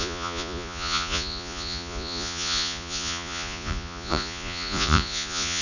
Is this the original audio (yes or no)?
no